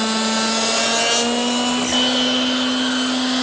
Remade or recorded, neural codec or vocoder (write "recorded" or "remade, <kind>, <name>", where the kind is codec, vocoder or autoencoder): recorded